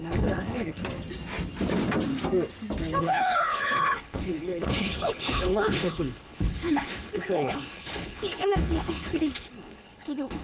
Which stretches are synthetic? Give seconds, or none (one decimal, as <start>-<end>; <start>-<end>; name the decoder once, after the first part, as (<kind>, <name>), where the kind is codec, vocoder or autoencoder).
0.0-0.8 (codec, HILCodec); 3.0-10.4

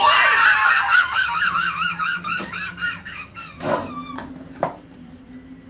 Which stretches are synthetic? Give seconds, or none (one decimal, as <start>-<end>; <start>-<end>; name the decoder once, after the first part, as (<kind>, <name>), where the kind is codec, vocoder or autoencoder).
0.6-3.9 (codec, DAC)

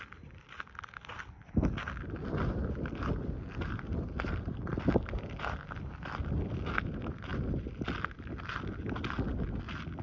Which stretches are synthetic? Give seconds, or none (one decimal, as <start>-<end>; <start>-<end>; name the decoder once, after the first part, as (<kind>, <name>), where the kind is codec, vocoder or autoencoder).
none

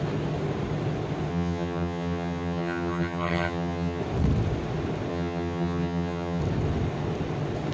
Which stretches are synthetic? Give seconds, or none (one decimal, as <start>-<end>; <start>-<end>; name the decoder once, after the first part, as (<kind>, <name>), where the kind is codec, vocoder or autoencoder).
1.3-4.0 (vocoder, HiFi-GAN); 5.1-6.4

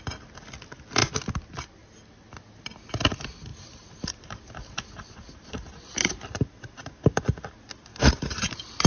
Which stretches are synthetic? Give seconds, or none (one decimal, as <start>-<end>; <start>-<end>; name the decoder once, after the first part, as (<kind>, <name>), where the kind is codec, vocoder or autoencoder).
3.5-6.4 (vocoder, BigVGAN v2); 7.9-8.9

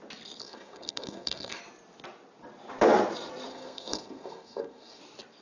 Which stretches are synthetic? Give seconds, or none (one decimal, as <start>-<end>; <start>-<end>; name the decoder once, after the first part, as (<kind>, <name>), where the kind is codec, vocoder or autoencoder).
0.4-1.6 (codec, SNAC); 3.5-5.0

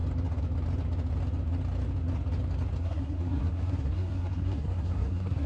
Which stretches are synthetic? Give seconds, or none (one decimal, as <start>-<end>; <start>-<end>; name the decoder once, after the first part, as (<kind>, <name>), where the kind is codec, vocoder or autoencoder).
2.8-5.5 (codec, SNAC)